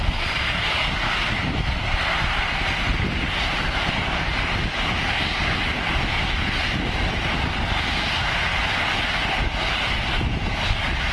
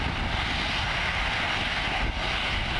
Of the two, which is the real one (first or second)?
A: second